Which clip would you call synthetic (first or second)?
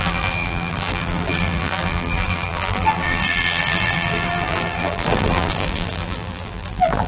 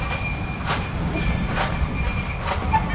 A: first